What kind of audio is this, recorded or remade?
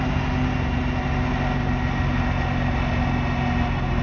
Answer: recorded